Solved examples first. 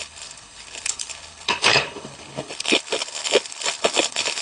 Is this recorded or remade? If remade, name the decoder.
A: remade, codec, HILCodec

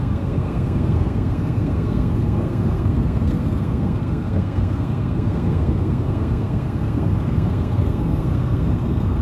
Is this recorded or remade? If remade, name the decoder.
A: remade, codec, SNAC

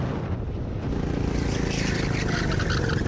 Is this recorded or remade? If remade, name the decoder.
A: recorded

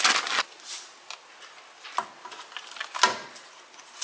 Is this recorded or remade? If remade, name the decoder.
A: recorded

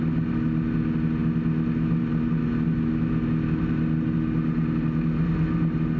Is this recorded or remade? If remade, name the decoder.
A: recorded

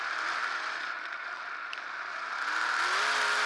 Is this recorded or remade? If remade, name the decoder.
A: recorded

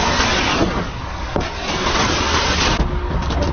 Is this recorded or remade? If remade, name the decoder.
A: recorded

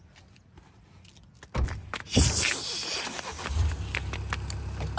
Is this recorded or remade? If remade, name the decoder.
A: recorded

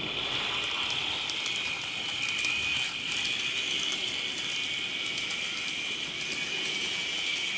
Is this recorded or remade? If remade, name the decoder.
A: recorded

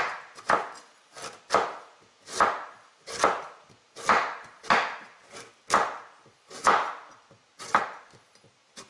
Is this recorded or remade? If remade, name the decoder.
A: recorded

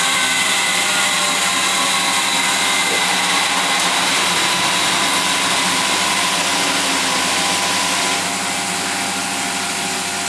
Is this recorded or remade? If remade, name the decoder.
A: recorded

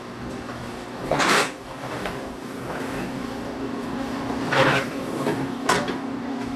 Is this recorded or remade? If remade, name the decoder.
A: remade, codec, DAC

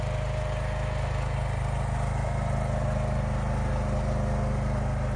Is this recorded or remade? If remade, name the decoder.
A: recorded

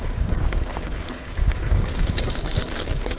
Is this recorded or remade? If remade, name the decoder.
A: remade, codec, DAC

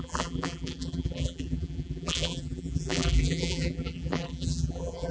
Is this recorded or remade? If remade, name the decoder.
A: remade, vocoder, BigVGAN v2